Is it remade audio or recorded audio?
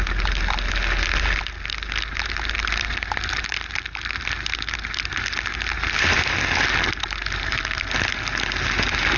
recorded